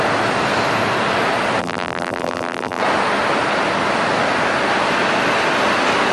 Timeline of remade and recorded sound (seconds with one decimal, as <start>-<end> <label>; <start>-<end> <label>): 0.0-1.6 recorded; 1.6-2.8 remade; 2.8-6.1 recorded